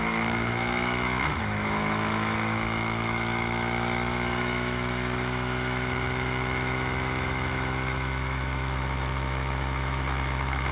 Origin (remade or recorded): remade